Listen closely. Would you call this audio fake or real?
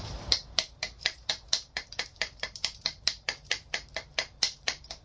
fake